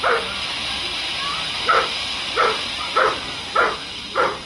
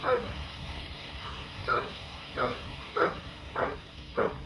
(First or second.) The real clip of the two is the first